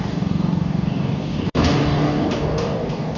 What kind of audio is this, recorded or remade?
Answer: remade